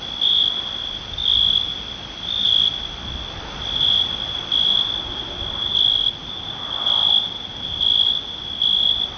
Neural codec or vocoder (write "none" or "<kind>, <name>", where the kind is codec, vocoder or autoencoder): none